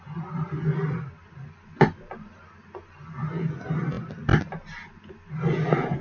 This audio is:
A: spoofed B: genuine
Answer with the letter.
B